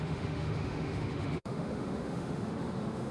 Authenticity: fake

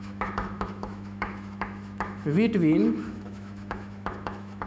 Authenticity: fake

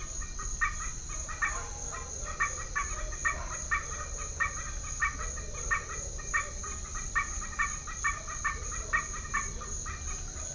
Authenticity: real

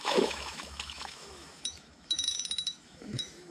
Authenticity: fake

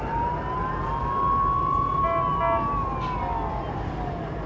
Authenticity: real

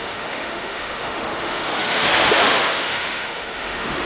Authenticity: fake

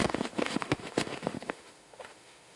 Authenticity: fake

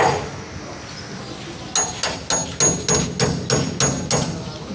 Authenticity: real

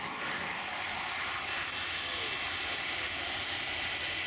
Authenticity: real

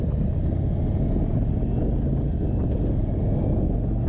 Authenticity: real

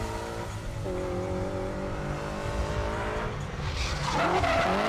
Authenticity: real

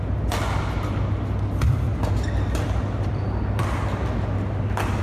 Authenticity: real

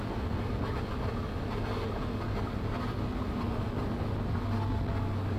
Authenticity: real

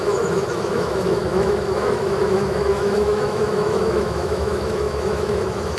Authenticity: fake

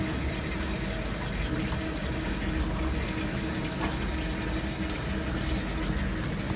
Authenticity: real